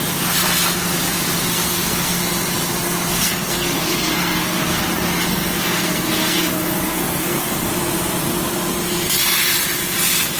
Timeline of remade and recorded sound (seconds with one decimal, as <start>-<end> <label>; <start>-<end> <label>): 0.0-1.5 recorded; 1.5-2.2 remade; 2.2-3.1 recorded; 3.1-4.8 remade; 4.8-5.3 recorded; 5.3-7.7 remade; 7.7-10.4 recorded